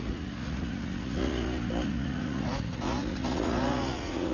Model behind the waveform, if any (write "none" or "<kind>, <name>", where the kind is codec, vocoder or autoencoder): vocoder, Vocos